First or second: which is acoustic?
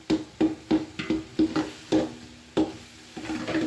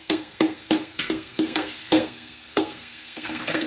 first